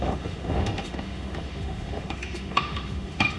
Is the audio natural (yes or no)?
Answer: no